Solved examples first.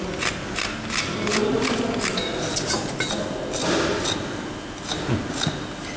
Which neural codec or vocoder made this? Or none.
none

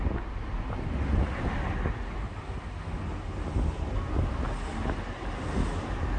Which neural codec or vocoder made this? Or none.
none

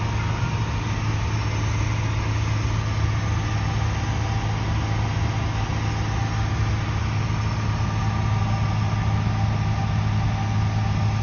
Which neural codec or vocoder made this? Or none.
none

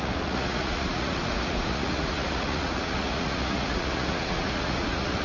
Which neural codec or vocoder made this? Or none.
vocoder, Vocos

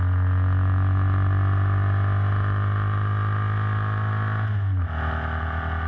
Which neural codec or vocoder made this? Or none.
none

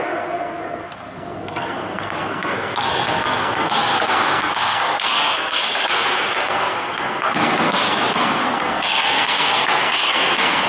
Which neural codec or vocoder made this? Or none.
codec, SNAC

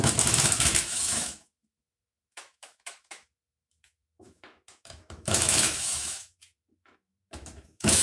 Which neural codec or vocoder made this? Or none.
autoencoder, DAC-VAE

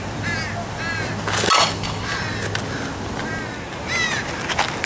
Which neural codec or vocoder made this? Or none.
none